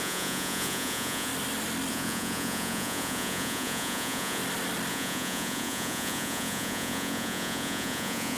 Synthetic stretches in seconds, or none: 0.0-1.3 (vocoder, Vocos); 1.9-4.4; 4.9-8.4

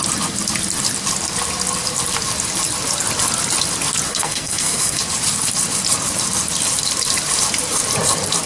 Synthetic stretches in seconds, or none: 4.1-5.0 (codec, SNAC)

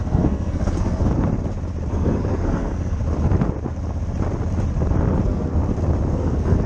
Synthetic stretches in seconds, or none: 0.0-1.0 (codec, SNAC); 1.9-3.0; 5.1-5.6; 6.1-6.7

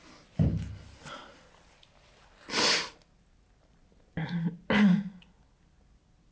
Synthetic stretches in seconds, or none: none

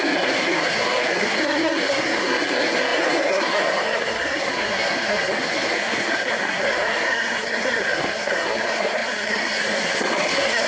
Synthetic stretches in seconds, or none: 0.0-10.7 (codec, SNAC)